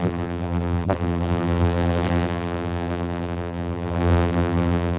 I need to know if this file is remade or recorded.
remade